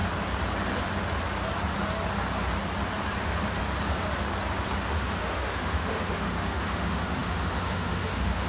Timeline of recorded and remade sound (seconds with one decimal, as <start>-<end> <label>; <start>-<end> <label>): 0.0-3.2 recorded; 3.2-3.6 remade; 3.6-4.9 recorded; 4.9-8.5 remade